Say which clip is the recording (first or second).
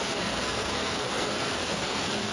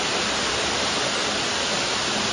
second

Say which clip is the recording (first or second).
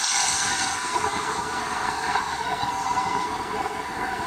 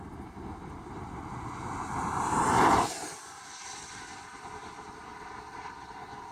second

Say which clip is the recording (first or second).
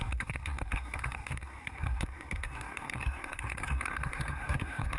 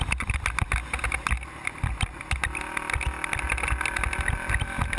second